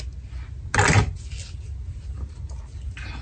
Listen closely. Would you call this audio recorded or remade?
recorded